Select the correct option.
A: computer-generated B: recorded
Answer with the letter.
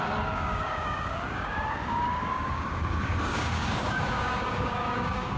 A